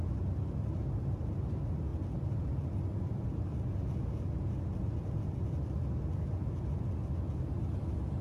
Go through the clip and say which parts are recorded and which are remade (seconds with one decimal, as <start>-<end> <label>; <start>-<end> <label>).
0.0-8.2 recorded

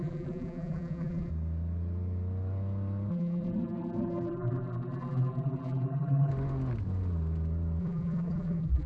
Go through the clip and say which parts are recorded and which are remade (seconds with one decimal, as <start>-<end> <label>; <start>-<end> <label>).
0.0-1.3 remade; 1.3-3.1 recorded; 3.1-6.3 remade; 6.3-7.8 recorded; 7.8-8.9 remade